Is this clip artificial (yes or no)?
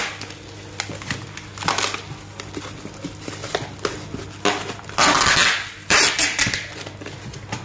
no